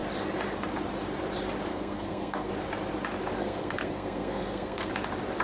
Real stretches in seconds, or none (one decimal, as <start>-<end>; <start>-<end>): 0.0-1.7; 2.5-3.4; 4.9-5.4